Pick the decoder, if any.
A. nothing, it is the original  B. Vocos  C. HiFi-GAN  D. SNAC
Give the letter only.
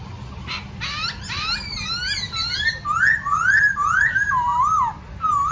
A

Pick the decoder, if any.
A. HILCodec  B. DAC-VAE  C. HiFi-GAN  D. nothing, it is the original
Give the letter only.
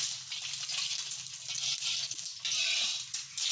D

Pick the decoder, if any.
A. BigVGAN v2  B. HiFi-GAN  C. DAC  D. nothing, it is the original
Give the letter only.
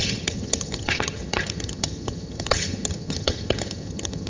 B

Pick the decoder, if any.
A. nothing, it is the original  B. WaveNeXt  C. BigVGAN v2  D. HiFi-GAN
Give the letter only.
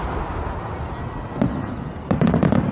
A